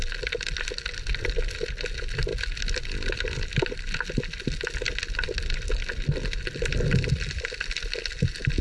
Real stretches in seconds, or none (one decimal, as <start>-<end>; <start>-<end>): 0.0-8.6